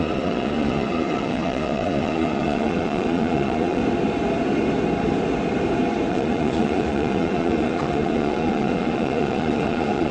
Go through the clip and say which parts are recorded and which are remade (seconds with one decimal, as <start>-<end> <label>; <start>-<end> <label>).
0.0-3.8 remade; 3.8-6.1 recorded; 6.1-10.1 remade